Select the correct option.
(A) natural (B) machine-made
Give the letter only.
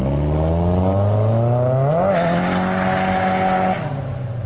A